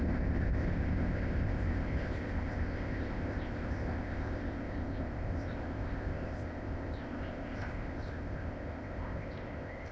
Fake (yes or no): yes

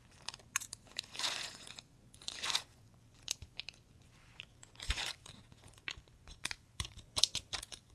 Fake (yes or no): yes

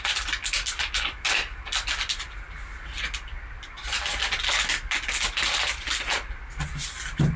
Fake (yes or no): no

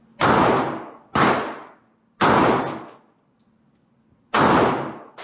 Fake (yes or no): no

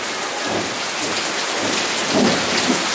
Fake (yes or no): no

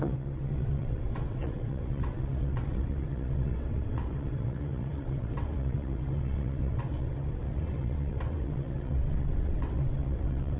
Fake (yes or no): yes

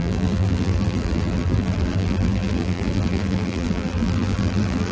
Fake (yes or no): yes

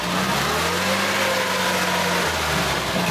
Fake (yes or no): no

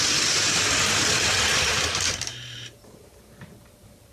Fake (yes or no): yes